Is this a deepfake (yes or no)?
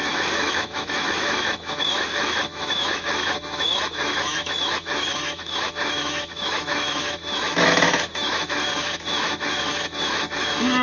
yes